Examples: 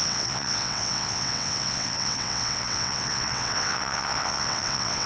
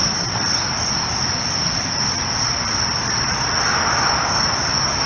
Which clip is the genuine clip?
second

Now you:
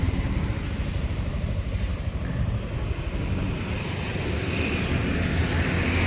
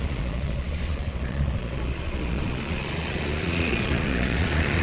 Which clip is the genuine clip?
first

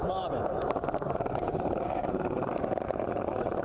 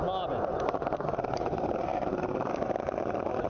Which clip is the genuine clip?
second